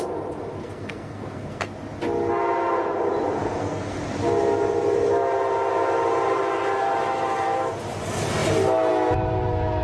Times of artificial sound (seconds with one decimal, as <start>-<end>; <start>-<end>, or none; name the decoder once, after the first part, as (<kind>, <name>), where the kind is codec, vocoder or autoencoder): 0.6-1.7 (codec, SNAC); 3.4-4.0